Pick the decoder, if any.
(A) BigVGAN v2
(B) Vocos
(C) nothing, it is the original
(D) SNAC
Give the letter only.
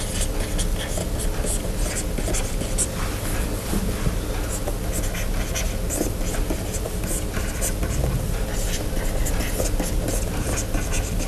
C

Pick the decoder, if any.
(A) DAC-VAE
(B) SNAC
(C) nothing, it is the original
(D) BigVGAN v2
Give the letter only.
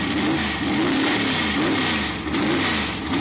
C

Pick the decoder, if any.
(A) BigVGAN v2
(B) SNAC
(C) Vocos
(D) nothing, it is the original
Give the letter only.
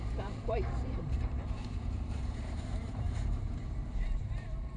A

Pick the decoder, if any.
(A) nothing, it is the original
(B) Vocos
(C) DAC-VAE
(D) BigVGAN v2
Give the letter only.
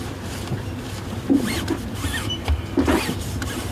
A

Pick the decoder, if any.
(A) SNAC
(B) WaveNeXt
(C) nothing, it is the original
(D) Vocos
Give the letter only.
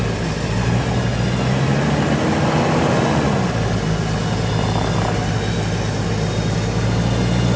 C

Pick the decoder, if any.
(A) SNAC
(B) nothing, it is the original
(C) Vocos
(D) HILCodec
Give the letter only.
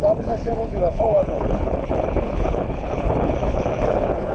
D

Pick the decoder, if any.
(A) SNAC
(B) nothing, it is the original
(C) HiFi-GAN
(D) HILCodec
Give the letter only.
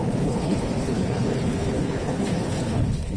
D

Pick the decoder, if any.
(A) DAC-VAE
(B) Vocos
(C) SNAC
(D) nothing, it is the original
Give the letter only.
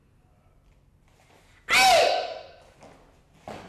D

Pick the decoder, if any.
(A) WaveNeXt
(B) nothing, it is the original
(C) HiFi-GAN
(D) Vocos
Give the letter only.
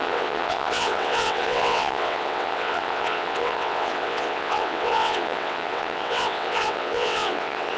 A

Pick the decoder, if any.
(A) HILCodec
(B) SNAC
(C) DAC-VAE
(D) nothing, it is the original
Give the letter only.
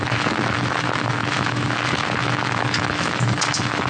C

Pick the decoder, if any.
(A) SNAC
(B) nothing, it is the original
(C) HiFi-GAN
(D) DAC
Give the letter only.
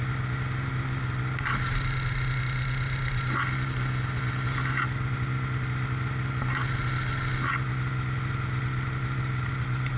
B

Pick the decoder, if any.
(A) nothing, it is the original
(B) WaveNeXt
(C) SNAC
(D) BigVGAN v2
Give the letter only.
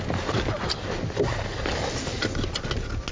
A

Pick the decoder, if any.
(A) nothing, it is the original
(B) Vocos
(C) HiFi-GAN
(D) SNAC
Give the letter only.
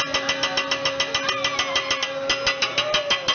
A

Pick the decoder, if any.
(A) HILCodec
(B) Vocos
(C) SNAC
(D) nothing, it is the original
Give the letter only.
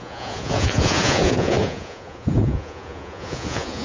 B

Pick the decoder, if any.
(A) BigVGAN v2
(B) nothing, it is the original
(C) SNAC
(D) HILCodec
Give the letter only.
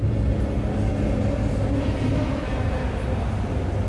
B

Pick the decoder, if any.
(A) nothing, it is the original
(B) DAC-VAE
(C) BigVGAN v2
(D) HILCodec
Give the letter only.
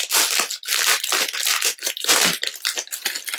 A